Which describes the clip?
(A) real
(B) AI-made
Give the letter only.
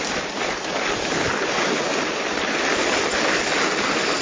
A